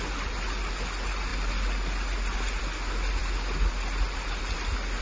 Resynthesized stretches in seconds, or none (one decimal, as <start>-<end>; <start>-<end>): none